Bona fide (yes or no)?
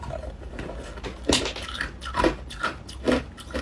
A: yes